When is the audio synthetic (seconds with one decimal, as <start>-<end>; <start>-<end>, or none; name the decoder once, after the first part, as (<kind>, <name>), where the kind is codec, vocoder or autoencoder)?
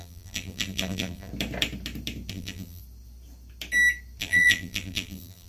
0.0-1.3 (vocoder, BigVGAN v2); 2.3-2.8; 4.2-5.5